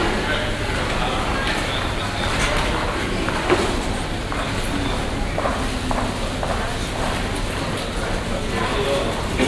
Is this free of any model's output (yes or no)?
yes